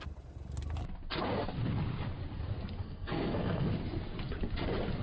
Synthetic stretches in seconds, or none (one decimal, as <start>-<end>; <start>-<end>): 2.8-3.7